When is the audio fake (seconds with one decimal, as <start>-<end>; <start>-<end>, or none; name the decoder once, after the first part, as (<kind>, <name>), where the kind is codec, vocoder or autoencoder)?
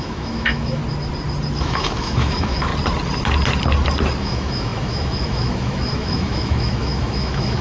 0.0-0.8 (autoencoder, DAC-VAE); 1.6-2.7; 4.2-7.6